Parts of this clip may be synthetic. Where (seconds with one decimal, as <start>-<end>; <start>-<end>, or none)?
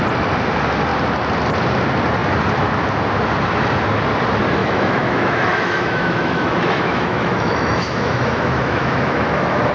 4.6-9.7